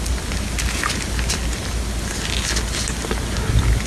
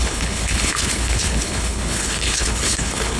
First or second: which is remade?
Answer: second